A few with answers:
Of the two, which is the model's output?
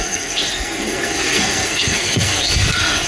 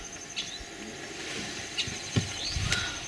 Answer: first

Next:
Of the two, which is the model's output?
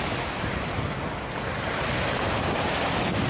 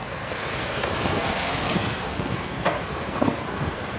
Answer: second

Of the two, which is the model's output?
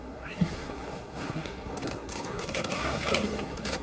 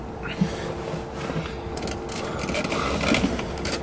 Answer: first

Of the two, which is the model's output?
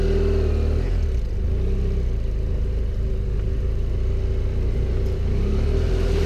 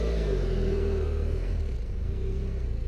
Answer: second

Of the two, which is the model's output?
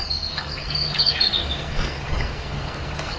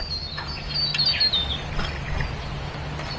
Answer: first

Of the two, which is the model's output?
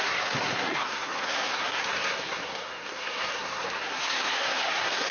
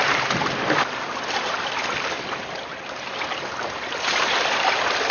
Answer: first